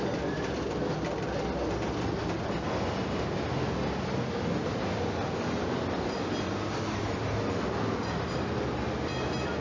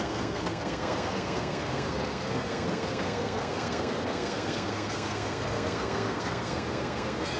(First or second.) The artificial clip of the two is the second